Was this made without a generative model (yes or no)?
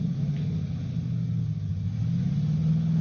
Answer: yes